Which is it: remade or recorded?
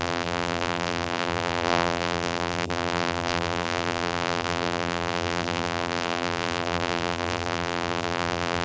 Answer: remade